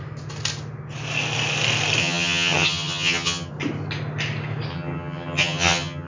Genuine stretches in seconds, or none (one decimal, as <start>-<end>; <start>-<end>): 0.0-2.0; 3.5-4.7